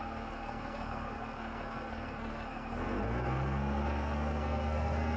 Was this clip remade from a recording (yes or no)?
yes